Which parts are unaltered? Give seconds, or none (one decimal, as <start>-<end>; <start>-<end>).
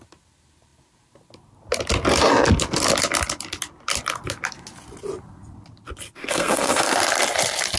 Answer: 0.0-6.2; 7.0-7.8